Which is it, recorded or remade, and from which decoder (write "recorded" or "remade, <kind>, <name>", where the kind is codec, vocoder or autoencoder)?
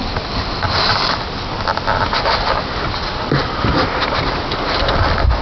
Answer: recorded